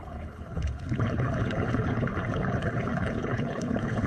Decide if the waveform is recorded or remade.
remade